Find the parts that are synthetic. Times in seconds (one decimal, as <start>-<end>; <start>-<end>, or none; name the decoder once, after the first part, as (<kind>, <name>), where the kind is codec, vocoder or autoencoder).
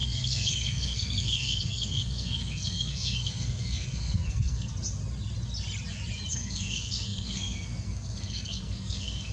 0.0-4.7 (codec, SNAC); 6.3-9.3